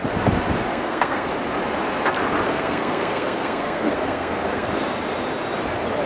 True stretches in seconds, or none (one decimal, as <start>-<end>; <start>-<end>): 0.0-0.7; 1.3-2.5; 4.7-6.0